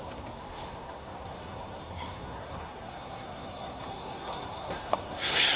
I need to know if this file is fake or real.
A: fake